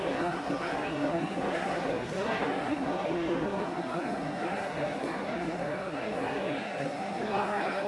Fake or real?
fake